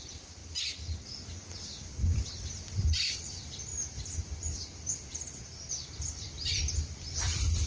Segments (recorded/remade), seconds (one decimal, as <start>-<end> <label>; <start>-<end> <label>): 0.0-0.4 remade; 0.4-2.3 recorded; 2.3-3.7 remade; 3.7-5.1 recorded; 5.1-7.7 remade